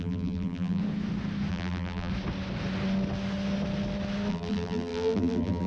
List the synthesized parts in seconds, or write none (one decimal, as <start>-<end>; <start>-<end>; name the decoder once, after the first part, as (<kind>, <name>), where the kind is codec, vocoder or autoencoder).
0.0-0.8 (vocoder, BigVGAN v2); 1.5-2.1; 4.3-5.7